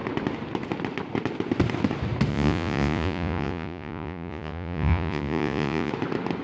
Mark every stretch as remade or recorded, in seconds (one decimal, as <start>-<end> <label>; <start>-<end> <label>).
0.0-2.3 recorded; 2.3-5.9 remade; 5.9-6.4 recorded